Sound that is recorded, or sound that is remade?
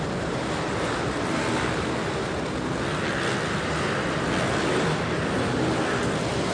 recorded